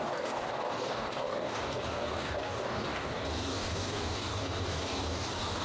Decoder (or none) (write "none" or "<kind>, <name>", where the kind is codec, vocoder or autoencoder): codec, DAC